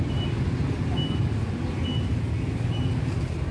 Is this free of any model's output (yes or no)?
yes